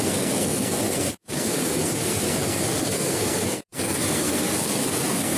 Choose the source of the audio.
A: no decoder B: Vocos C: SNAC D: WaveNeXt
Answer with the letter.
C